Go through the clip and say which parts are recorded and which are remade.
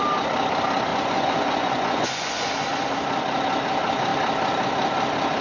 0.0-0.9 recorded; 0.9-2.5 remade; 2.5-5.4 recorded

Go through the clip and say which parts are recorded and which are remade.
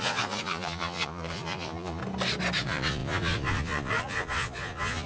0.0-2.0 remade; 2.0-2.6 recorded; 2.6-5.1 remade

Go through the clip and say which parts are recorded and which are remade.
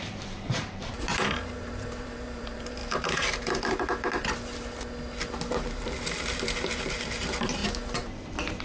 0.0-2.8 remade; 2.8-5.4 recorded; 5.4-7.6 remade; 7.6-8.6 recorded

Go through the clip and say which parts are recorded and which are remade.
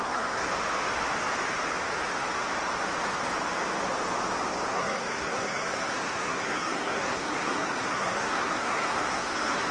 0.0-0.5 remade; 0.5-4.7 recorded; 4.7-9.7 remade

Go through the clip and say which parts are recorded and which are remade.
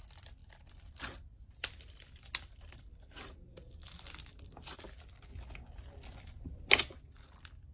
0.0-7.7 recorded